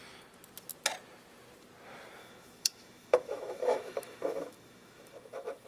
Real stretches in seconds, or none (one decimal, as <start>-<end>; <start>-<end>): 0.0-2.2